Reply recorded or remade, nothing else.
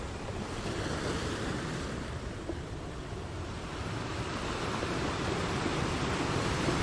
recorded